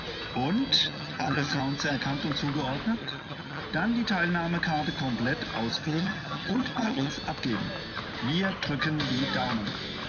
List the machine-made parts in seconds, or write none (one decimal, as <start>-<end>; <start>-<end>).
0.7-1.6; 3.0-3.6; 5.7-7.1